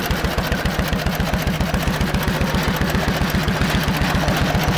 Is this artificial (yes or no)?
no